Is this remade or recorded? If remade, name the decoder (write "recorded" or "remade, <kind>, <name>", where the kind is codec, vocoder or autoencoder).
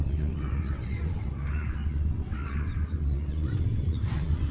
remade, vocoder, WaveNeXt